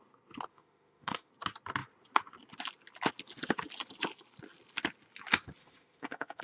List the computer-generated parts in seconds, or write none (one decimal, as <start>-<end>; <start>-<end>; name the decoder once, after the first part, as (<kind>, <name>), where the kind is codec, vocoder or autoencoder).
0.5-1.3 (autoencoder, DAC-VAE); 5.6-6.4